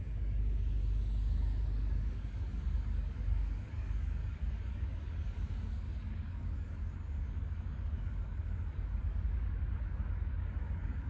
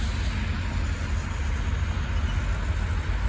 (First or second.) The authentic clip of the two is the second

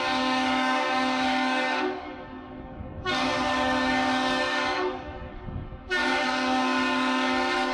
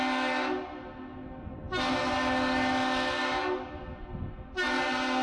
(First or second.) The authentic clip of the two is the second